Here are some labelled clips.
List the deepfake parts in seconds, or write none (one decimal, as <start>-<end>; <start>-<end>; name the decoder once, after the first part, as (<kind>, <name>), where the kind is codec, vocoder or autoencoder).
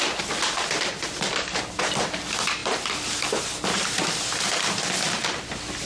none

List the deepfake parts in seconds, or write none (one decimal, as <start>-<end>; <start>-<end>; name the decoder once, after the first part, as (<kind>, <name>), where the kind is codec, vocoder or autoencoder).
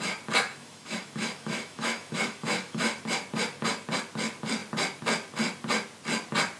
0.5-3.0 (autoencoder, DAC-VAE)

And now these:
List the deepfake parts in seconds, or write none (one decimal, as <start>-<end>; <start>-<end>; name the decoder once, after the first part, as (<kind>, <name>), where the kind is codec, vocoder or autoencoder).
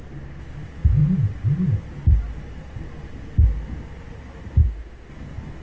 4.6-5.1 (autoencoder, DAC-VAE)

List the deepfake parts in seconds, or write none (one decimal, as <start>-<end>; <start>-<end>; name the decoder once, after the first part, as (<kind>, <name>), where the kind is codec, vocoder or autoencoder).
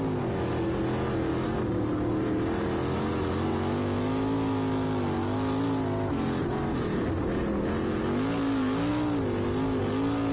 none